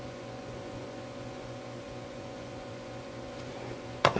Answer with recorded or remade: remade